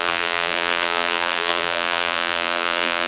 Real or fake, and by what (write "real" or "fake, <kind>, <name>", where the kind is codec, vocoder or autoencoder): fake, vocoder, BigVGAN v2